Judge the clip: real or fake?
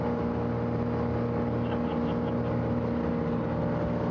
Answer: real